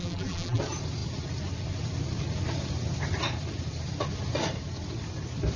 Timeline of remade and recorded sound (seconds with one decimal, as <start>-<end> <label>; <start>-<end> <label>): 0.0-0.6 remade; 0.6-5.6 recorded